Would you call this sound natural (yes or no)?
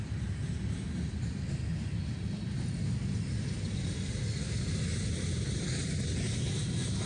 yes